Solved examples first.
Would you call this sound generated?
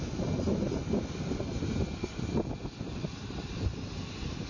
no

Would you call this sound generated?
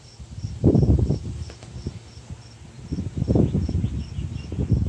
no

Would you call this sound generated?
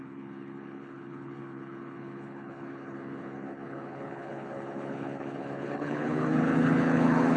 yes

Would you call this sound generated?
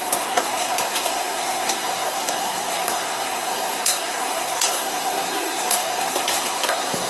yes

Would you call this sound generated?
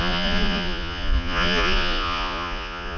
yes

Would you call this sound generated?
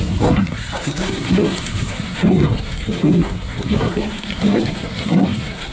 yes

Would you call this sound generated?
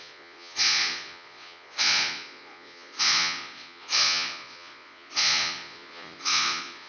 yes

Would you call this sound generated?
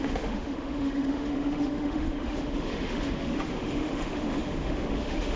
yes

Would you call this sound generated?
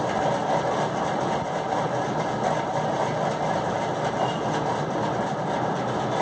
no